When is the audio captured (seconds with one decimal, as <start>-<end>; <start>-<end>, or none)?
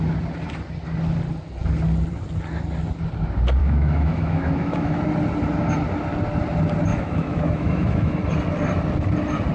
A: 0.0-3.6; 5.0-6.9; 8.2-9.5